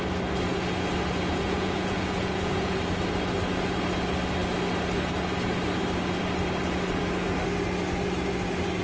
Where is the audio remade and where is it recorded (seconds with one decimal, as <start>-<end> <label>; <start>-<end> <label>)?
0.0-1.3 recorded; 1.3-2.8 remade; 2.8-8.8 recorded